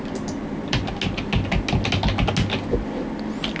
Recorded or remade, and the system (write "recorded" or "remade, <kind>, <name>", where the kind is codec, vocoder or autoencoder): recorded